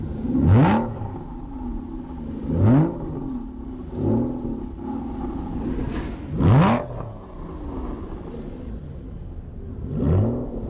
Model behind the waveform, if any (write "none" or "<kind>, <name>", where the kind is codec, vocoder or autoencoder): none